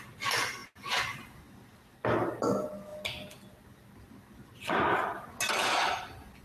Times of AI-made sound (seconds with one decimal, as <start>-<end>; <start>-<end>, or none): none